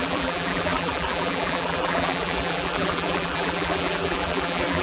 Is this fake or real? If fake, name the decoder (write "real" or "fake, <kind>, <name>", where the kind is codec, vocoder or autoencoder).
fake, vocoder, BigVGAN v2